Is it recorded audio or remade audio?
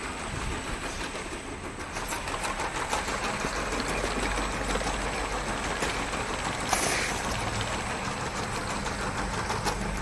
recorded